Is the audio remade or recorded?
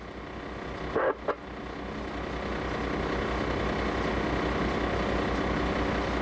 recorded